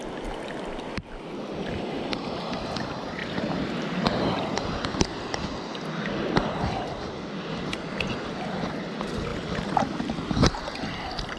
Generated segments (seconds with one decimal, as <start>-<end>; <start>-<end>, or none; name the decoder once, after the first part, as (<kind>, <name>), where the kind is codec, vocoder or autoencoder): 3.2-5.0 (vocoder, BigVGAN v2); 9.3-9.8